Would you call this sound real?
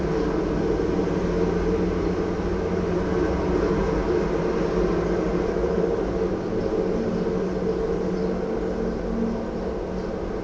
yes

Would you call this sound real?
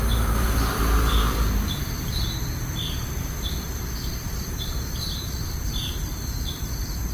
no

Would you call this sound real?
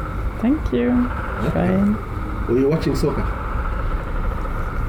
yes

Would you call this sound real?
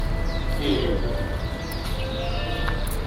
yes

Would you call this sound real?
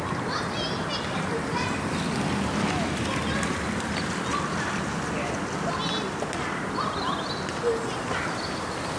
yes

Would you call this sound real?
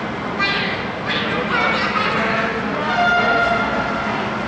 yes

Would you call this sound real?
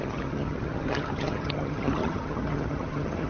no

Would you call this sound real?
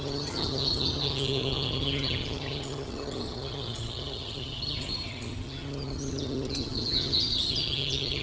no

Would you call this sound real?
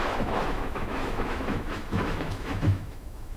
no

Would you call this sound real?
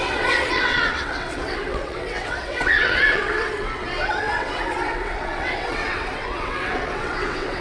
no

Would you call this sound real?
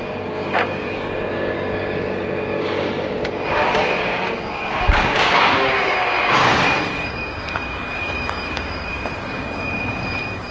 no